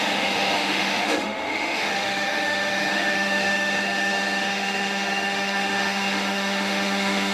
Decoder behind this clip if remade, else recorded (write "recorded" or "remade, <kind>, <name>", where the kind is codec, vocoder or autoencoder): remade, autoencoder, DAC-VAE